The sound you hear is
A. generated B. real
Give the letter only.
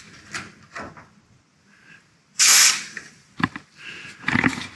B